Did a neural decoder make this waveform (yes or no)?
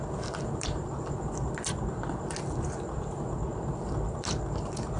yes